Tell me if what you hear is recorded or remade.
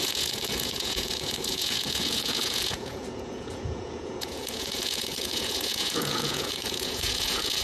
remade